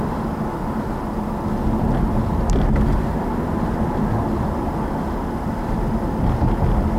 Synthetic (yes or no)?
no